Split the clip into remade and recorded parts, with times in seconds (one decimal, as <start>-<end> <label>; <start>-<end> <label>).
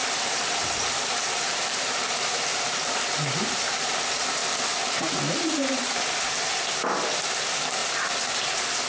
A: 0.0-0.6 recorded; 0.6-4.4 remade; 4.4-5.6 recorded; 5.6-7.8 remade; 7.8-8.9 recorded